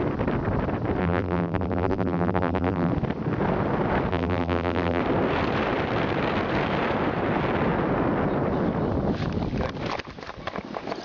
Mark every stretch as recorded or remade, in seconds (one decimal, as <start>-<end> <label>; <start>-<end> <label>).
0.0-1.0 recorded; 1.0-2.9 remade; 2.9-4.1 recorded; 4.1-5.0 remade; 5.0-11.0 recorded